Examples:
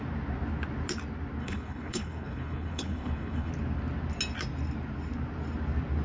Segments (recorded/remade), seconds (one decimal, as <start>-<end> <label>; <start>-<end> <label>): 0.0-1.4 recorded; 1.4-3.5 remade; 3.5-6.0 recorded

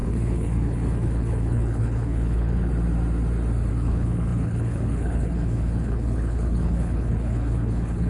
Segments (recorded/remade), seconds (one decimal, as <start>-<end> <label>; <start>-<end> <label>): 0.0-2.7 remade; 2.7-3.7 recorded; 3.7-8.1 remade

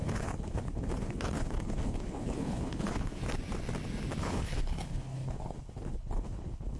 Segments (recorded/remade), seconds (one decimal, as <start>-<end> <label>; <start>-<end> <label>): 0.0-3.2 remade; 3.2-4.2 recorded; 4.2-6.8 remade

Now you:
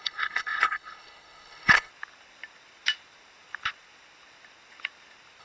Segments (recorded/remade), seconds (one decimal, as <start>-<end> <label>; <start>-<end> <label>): 0.0-1.9 remade; 1.9-5.4 recorded

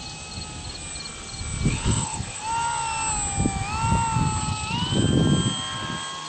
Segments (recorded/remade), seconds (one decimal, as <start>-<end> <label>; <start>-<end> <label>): 0.0-1.7 recorded; 1.7-2.4 remade; 2.4-6.3 recorded

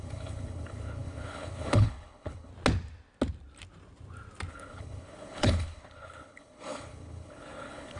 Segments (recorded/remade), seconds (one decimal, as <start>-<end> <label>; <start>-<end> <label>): 0.0-2.5 remade; 2.5-4.5 recorded; 4.5-8.0 remade

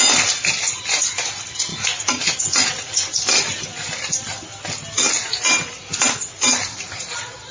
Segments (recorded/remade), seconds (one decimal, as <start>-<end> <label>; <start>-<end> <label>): 0.0-7.5 recorded